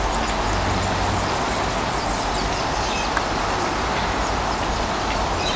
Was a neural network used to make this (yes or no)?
no